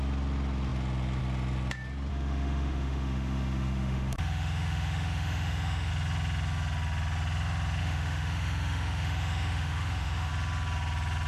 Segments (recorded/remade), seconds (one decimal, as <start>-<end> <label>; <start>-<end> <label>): 0.0-2.1 recorded; 2.1-5.9 remade; 5.9-7.8 recorded; 7.8-10.3 remade; 10.3-11.3 recorded

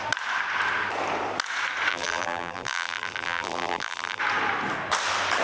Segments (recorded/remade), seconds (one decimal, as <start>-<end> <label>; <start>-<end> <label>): 0.0-1.9 recorded; 1.9-4.2 remade; 4.2-5.4 recorded

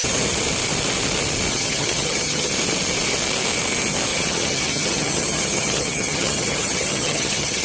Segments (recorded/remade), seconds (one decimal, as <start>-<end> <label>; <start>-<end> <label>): 0.0-1.5 recorded; 1.5-2.5 remade; 2.5-4.1 recorded; 4.1-7.6 remade

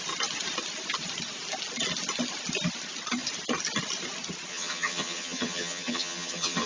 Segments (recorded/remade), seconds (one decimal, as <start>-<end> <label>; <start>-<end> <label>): 0.0-4.5 recorded; 4.5-6.7 remade

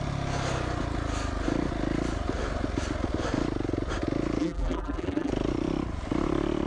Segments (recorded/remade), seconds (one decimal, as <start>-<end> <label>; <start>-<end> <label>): 0.0-4.4 recorded; 4.4-5.3 remade; 5.3-6.7 recorded

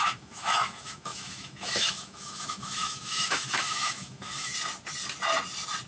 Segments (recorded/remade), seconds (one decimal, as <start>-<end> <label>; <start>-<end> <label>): 0.0-4.5 remade; 4.5-5.9 recorded

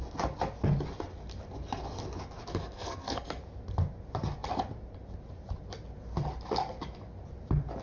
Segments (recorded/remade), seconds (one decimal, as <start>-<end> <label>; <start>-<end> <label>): 0.0-2.5 recorded; 2.5-3.4 remade; 3.4-7.8 recorded